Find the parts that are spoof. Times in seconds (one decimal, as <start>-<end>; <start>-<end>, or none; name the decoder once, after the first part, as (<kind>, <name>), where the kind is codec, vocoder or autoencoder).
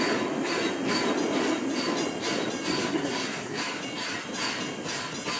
2.8-3.6 (codec, SNAC)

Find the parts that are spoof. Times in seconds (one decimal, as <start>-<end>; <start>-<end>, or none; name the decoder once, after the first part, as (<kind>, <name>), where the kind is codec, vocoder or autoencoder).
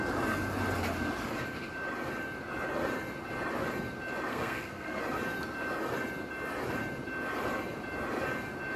4.3-5.0 (codec, SNAC)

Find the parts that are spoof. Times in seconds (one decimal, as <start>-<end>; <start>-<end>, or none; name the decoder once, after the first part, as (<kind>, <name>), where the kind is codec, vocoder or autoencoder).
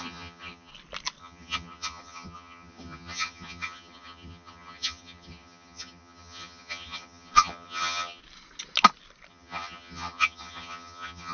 0.0-0.7 (vocoder, HiFi-GAN); 1.2-8.2; 9.3-11.3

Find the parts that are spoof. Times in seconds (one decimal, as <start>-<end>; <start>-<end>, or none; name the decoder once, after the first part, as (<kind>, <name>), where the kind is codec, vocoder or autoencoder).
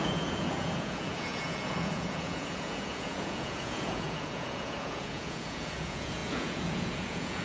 0.0-7.4 (vocoder, Vocos)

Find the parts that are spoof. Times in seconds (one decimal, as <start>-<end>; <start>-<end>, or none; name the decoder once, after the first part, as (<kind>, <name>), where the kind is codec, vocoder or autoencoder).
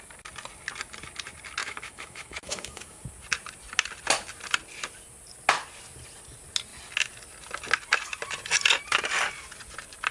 1.6-3.0 (autoencoder, DAC-VAE)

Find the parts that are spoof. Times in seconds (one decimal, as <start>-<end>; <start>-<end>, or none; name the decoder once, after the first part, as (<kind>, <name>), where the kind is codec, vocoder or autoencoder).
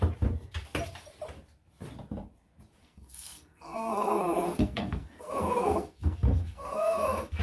2.8-7.4 (codec, SNAC)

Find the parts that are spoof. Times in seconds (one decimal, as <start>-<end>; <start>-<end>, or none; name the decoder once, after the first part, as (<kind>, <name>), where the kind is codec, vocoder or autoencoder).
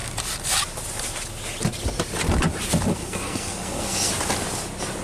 2.9-4.1 (codec, SNAC)